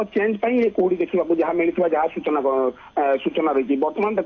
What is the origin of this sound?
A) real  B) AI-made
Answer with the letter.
A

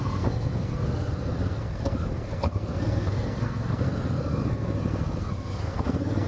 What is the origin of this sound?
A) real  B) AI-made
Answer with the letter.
B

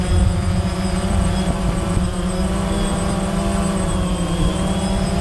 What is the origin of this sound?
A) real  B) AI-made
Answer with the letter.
B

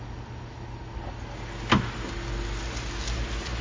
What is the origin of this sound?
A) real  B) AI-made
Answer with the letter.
A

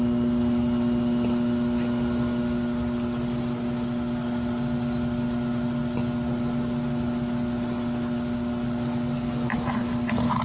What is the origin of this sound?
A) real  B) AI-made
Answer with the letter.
A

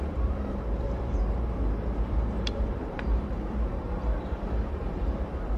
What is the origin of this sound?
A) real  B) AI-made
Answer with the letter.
B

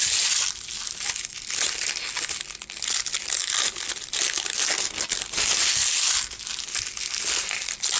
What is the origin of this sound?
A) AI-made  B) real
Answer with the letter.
B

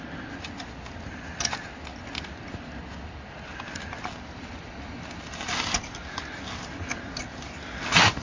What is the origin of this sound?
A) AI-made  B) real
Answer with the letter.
B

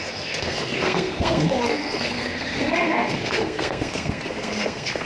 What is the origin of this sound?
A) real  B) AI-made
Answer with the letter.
B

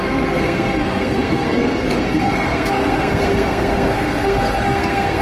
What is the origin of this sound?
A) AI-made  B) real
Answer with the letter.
A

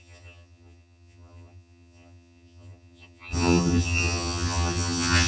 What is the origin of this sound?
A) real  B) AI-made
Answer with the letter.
B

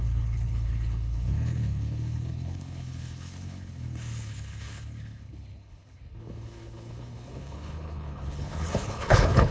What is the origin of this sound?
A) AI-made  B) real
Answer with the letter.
A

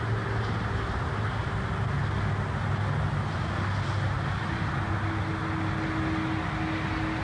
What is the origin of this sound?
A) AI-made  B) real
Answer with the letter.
B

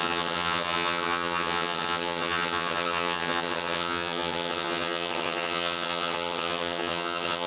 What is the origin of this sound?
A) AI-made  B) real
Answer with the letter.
A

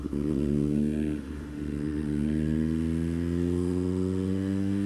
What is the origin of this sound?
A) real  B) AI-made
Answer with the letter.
B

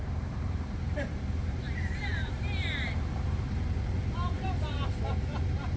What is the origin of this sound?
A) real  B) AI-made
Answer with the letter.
B